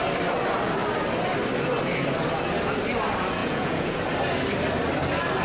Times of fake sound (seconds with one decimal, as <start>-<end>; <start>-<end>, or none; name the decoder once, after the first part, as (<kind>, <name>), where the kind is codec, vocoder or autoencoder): 3.4-4.1 (vocoder, Vocos)